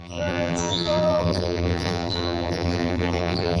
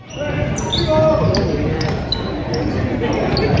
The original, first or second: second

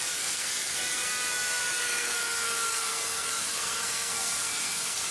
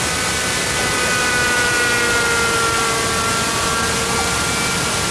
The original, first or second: second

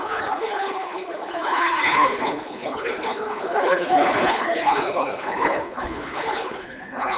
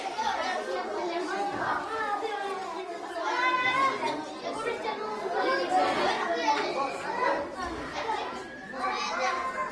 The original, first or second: second